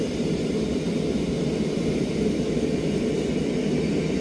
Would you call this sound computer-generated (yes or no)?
yes